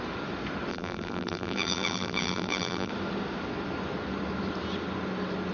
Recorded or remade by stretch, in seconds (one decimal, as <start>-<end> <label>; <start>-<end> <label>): 0.0-0.7 recorded; 0.7-2.9 remade; 2.9-5.5 recorded